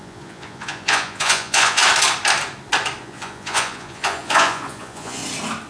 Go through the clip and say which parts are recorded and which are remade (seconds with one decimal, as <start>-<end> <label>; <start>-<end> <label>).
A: 0.0-1.8 remade; 1.8-3.0 recorded; 3.0-5.2 remade; 5.2-5.7 recorded